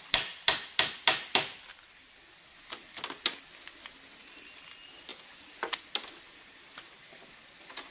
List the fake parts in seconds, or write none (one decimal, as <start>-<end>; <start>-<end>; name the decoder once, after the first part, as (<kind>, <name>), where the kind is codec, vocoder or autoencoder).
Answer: none